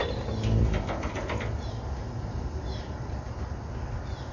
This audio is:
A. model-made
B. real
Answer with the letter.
B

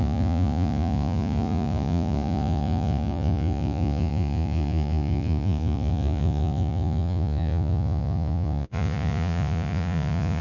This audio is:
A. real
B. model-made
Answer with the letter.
B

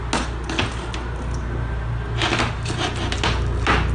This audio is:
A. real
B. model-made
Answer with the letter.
A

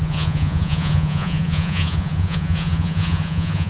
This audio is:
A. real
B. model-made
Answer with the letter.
B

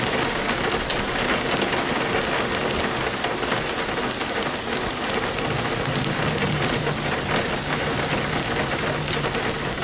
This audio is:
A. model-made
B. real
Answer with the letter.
B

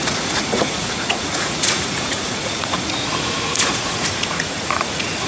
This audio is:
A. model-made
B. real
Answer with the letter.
A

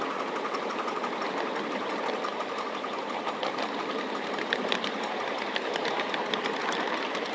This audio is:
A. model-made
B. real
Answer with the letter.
B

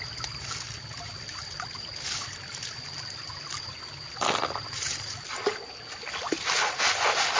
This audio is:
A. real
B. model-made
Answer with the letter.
A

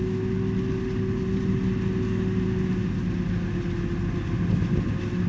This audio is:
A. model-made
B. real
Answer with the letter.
B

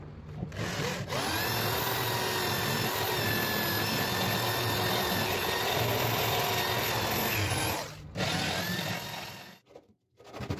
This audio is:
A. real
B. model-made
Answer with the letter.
A